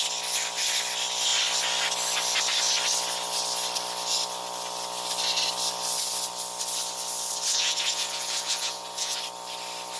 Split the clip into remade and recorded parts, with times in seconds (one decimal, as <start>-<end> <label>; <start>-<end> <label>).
0.0-7.5 recorded; 7.5-9.2 remade; 9.2-10.0 recorded